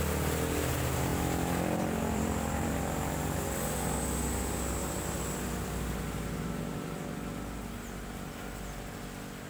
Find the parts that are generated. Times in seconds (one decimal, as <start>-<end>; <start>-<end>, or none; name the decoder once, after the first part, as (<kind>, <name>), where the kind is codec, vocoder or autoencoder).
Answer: 1.1-2.7 (vocoder, BigVGAN v2); 4.8-6.0